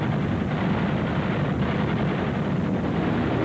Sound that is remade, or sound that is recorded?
recorded